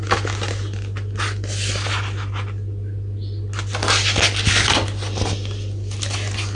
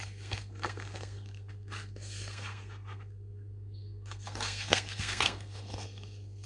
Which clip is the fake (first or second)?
second